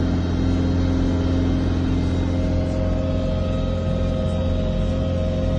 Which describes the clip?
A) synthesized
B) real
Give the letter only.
B